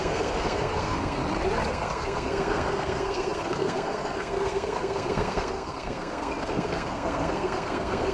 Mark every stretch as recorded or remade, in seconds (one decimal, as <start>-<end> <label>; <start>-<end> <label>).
0.0-1.2 remade; 1.2-1.7 recorded; 1.7-8.1 remade